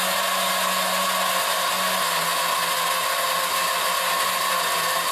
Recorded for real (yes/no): yes